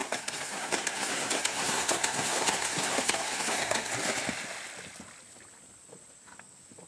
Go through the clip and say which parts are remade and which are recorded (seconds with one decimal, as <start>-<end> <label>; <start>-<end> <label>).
0.0-3.9 remade; 3.9-6.9 recorded